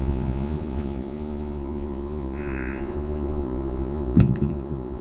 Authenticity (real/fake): fake